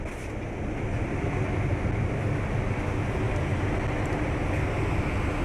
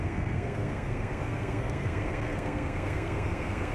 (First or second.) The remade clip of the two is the second